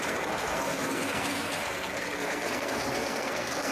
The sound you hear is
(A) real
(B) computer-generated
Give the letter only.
B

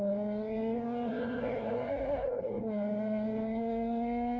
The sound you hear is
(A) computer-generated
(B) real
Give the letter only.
A